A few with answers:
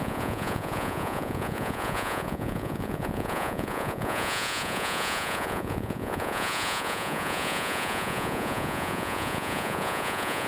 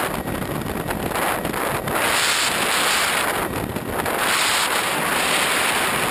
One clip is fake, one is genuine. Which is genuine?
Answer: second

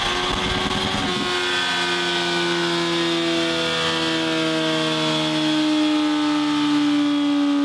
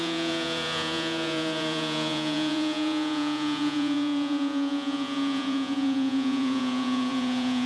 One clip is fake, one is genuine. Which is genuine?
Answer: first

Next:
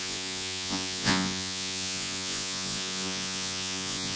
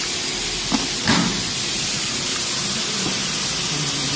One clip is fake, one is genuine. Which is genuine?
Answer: second